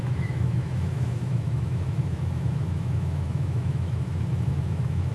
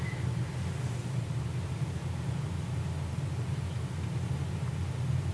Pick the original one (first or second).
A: second